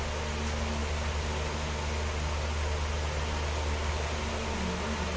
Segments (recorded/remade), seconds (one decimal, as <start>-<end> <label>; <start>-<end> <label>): 0.0-5.2 recorded